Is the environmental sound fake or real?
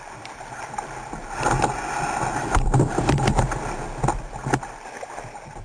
real